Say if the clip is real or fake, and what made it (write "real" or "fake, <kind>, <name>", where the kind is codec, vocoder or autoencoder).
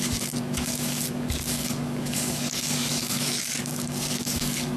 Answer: fake, codec, DAC